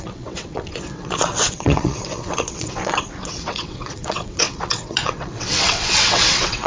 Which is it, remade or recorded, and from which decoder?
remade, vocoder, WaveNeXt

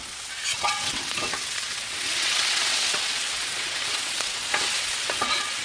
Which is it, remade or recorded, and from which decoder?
remade, vocoder, WaveNeXt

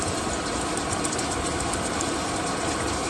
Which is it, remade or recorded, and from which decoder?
remade, vocoder, BigVGAN v2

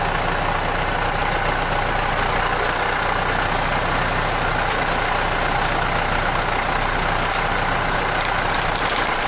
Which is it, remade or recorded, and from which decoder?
recorded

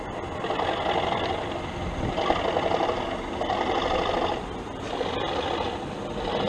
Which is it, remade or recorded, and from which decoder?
recorded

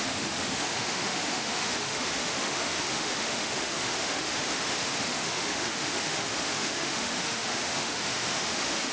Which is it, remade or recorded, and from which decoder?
remade, autoencoder, DAC-VAE